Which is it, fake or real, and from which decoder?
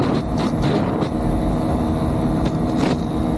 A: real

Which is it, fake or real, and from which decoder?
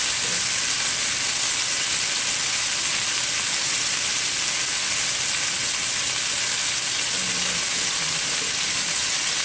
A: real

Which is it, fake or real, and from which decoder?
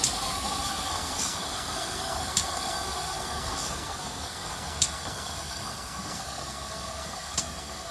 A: fake, codec, SNAC